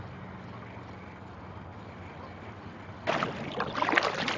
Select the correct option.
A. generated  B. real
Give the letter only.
B